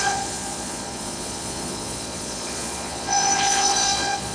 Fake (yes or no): yes